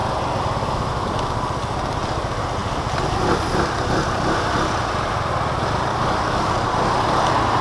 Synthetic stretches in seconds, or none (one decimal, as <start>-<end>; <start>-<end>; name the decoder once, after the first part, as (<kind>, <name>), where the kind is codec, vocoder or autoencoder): 5.9-6.9 (codec, DAC)